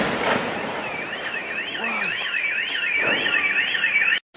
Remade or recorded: recorded